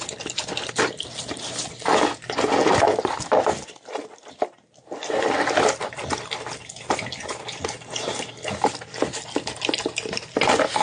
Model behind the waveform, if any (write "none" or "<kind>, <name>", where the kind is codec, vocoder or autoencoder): none